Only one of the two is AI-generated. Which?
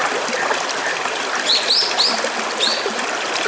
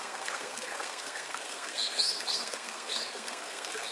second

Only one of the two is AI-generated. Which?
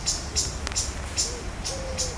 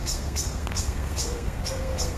second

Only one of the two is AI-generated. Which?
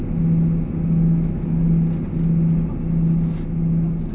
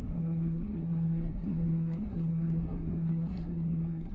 second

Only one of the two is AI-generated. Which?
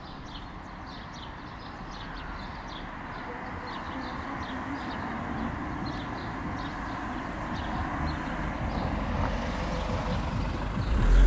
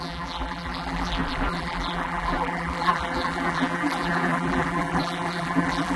second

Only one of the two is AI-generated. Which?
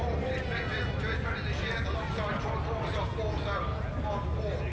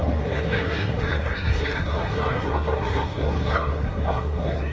second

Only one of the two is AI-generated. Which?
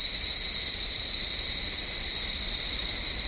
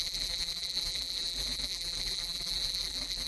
second